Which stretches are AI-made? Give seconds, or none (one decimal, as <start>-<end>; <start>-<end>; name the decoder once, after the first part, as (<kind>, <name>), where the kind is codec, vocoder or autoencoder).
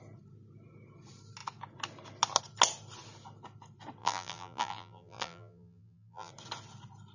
4.0-6.3 (vocoder, BigVGAN v2)